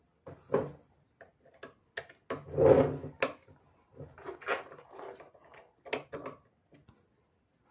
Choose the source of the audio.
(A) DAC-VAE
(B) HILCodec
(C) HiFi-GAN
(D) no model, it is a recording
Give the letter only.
D